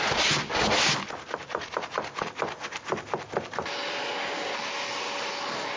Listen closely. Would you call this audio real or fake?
real